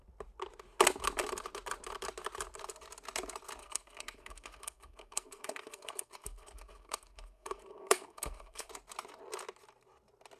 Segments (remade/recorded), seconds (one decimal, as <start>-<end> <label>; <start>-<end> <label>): 0.0-3.6 recorded; 3.6-8.7 remade; 8.7-10.4 recorded